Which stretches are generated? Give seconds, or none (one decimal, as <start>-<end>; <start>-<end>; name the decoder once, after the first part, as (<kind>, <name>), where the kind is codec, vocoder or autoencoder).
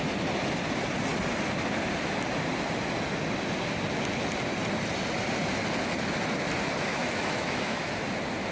6.9-7.9 (autoencoder, DAC-VAE)